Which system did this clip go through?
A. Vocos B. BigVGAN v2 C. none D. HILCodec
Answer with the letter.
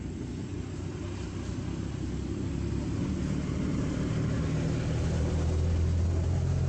C